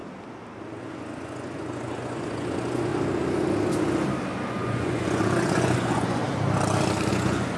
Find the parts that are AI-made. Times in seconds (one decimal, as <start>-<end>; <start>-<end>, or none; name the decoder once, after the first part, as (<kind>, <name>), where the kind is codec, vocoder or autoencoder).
0.8-2.9 (vocoder, Vocos); 4.5-6.2; 7.1-7.6